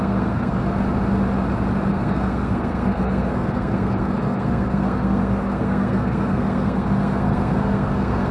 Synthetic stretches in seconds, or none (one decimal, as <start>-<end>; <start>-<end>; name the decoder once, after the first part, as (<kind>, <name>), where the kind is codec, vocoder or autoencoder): 0.0-0.5 (codec, SNAC); 1.9-8.3